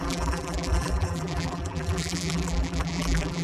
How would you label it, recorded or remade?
remade